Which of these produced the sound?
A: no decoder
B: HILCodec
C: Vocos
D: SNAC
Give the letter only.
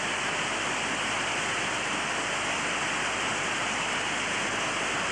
A